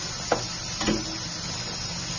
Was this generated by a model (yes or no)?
no